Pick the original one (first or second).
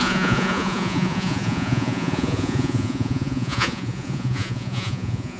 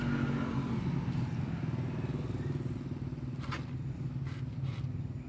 second